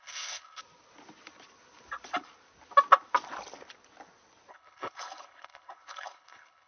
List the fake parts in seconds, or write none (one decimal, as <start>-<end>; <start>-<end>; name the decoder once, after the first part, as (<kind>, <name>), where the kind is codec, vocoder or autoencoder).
0.0-0.6 (codec, HILCodec); 4.5-6.7